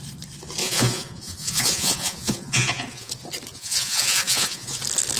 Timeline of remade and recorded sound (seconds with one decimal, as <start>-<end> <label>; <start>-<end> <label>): 0.0-0.6 recorded; 0.6-3.1 remade; 3.1-3.5 recorded; 3.5-4.8 remade; 4.8-5.2 recorded